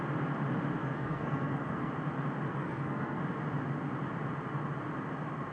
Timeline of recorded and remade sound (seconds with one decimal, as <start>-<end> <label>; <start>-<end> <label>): 0.0-0.8 recorded; 0.8-1.9 remade; 1.9-2.5 recorded; 2.5-3.2 remade; 3.2-5.5 recorded